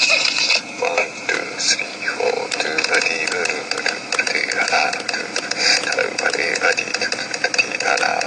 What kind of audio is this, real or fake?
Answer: real